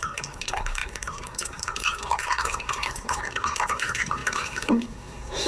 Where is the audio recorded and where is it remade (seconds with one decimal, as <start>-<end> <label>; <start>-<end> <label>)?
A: 0.0-5.5 remade